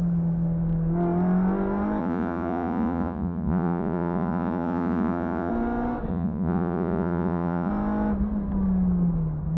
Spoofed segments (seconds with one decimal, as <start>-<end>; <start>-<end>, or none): 2.0-5.5; 6.1-7.7